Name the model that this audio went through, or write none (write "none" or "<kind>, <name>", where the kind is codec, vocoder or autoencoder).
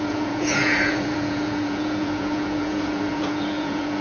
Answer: vocoder, Vocos